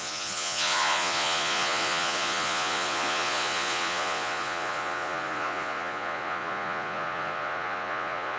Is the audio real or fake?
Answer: fake